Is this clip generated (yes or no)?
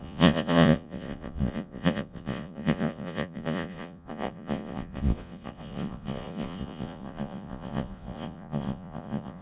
yes